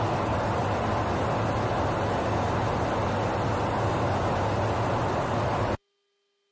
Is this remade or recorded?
recorded